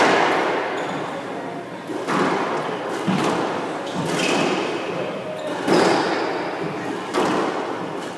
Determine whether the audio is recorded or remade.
recorded